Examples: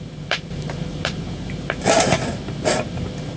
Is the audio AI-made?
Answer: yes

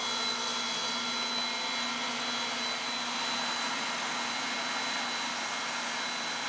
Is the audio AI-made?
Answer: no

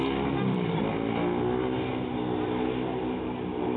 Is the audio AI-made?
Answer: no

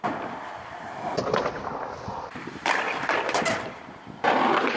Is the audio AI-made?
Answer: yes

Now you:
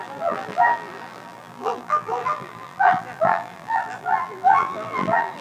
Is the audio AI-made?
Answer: yes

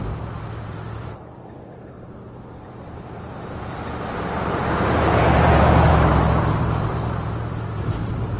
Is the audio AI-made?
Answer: yes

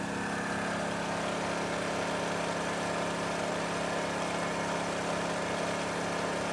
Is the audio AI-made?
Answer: no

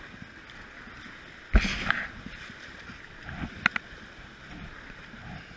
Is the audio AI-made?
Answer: no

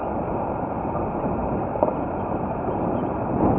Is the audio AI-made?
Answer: yes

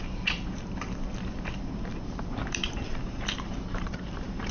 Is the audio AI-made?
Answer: yes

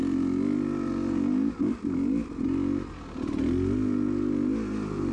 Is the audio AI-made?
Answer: no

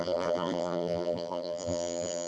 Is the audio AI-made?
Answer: yes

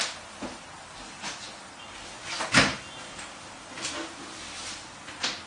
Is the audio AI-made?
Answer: no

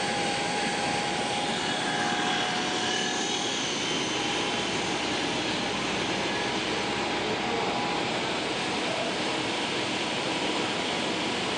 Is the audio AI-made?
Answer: yes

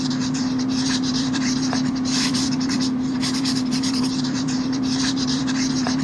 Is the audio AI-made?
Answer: yes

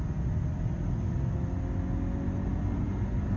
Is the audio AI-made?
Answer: no